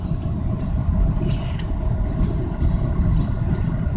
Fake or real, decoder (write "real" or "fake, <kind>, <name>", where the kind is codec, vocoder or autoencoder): real